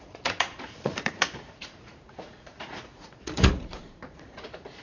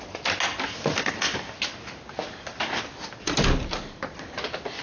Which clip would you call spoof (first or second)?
first